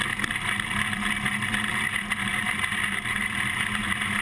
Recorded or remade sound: recorded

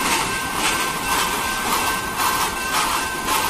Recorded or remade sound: remade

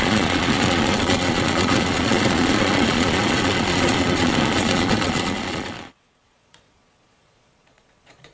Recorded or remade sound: remade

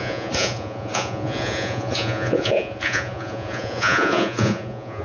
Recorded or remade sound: remade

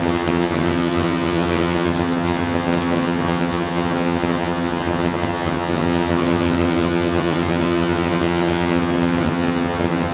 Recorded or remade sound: remade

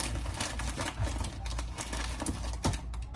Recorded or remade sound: recorded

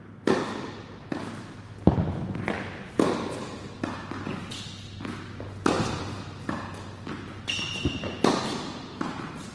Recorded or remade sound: recorded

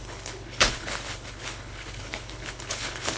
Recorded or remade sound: remade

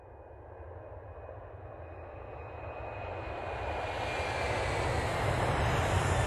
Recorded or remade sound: recorded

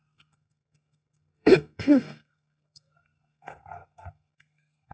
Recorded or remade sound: remade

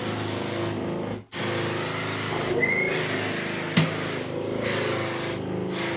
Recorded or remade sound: recorded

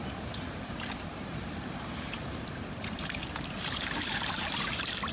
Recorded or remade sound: remade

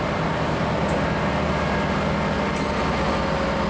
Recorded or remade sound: recorded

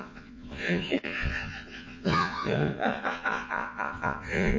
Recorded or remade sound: remade